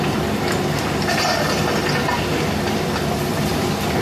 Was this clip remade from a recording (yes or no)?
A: no